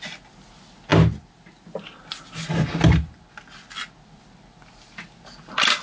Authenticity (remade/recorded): recorded